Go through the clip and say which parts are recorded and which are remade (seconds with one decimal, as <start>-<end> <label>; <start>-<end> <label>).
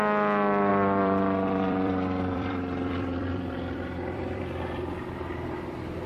0.0-0.7 recorded; 0.7-4.4 remade; 4.4-6.1 recorded